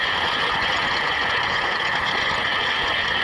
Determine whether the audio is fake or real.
fake